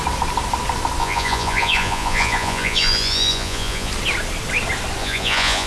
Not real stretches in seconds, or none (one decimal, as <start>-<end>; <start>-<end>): 1.0-3.9; 5.0-5.7